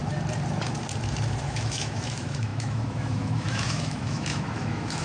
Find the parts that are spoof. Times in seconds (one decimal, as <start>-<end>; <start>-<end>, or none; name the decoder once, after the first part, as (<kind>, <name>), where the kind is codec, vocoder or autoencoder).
1.4-5.0 (autoencoder, DAC-VAE)

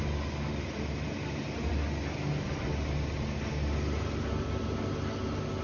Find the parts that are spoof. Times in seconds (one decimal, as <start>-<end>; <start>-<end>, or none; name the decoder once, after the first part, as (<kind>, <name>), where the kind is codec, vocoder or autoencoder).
none

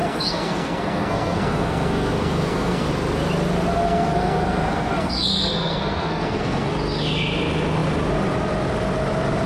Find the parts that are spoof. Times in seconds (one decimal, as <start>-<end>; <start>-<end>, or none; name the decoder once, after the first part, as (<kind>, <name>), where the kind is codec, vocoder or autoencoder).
0.0-2.9 (codec, SNAC); 3.8-6.7

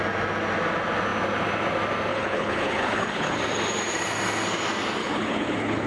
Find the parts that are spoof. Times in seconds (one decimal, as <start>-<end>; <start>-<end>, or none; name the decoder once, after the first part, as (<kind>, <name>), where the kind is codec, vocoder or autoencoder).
2.1-3.4 (codec, HILCodec); 5.0-5.9